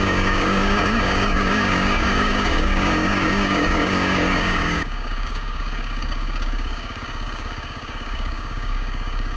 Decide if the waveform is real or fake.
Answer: fake